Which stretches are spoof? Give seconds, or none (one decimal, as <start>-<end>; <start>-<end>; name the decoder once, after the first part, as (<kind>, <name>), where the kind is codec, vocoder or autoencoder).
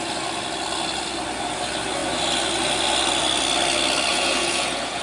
4.1-5.0 (vocoder, Vocos)